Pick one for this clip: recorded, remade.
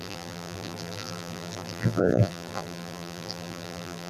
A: remade